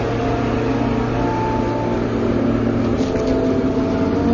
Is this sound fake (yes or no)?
no